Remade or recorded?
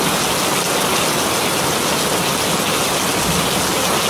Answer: recorded